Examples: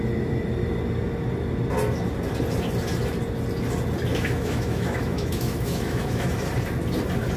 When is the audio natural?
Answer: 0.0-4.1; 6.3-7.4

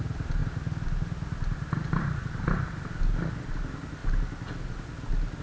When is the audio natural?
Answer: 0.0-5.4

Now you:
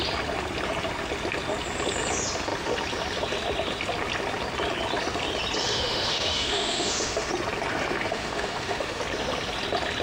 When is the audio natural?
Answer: 0.0-5.6; 7.3-8.1; 9.0-10.0

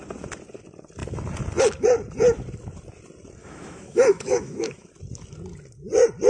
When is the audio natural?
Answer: 0.0-3.4; 4.9-6.3

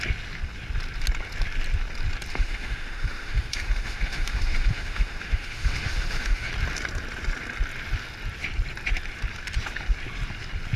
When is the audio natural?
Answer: 0.0-2.3; 6.5-10.8

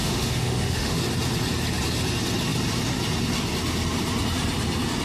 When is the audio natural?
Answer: 1.0-5.0

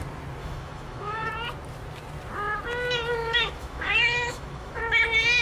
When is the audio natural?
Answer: 0.0-0.4; 1.3-3.2; 4.8-5.4

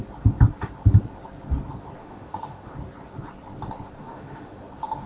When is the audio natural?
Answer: 0.0-2.0; 2.7-4.0; 4.6-5.1